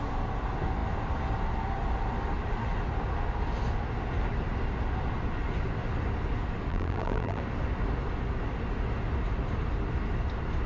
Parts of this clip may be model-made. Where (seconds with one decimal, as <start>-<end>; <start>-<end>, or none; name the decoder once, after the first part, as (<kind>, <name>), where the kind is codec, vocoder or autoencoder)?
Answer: 6.7-7.4 (vocoder, BigVGAN v2)